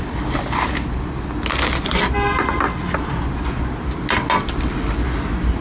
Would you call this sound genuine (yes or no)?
yes